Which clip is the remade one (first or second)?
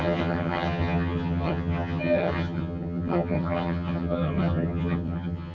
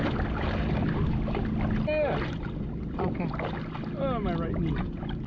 first